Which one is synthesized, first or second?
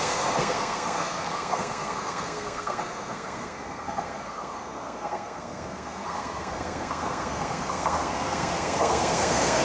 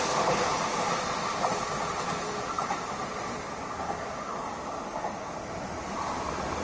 first